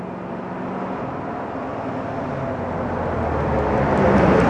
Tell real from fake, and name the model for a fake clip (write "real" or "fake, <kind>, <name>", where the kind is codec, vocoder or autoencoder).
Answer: real